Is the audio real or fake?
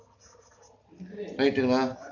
real